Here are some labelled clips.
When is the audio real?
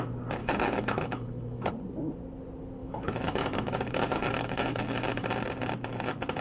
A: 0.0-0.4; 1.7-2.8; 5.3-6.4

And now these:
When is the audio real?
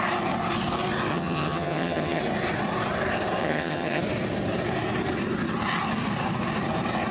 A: 0.0-1.1; 2.2-3.4; 4.0-7.1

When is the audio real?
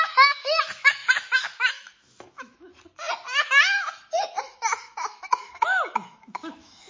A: 2.7-4.4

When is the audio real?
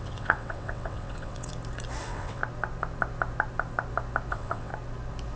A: 1.5-2.0; 2.4-4.3; 4.7-5.4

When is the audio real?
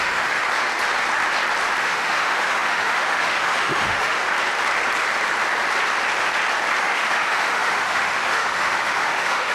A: 0.4-1.8; 4.2-6.8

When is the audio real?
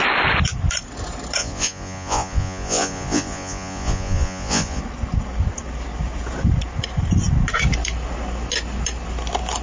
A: 0.0-1.4; 4.8-9.6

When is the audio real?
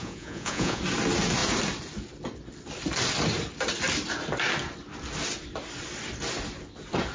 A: 0.8-7.1